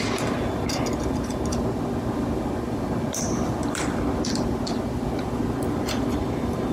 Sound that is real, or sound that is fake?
real